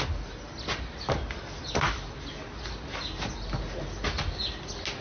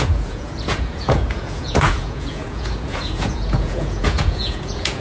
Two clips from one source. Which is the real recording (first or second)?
first